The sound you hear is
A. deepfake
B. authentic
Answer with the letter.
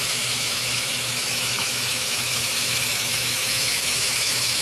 A